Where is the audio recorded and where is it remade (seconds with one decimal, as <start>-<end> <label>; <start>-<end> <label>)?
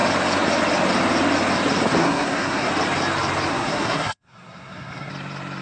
0.0-2.0 recorded; 2.0-2.7 remade; 2.7-3.5 recorded; 3.5-5.1 remade; 5.1-5.6 recorded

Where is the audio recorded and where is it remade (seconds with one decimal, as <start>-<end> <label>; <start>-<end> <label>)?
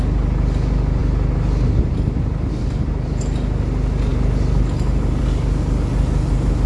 0.0-6.7 recorded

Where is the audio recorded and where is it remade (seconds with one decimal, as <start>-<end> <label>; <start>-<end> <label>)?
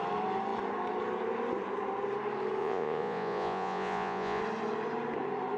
0.0-2.6 recorded; 2.6-4.4 remade; 4.4-5.6 recorded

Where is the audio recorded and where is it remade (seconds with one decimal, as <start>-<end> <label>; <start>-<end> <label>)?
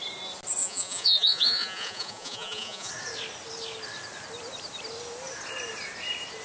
0.0-0.6 recorded; 0.6-2.9 remade; 2.9-6.4 recorded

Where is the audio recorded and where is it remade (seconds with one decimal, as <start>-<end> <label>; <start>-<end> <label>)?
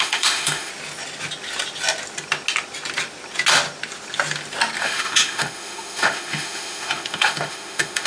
0.0-0.7 remade; 0.7-4.8 recorded; 4.8-8.1 remade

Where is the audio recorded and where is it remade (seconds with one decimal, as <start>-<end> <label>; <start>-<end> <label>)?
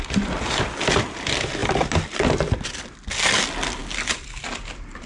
0.0-5.1 recorded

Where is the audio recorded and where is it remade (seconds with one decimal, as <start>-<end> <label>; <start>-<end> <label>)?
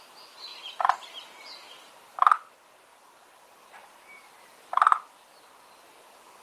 0.0-2.9 recorded; 2.9-5.1 remade; 5.1-6.4 recorded